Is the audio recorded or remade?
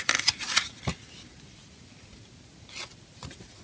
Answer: recorded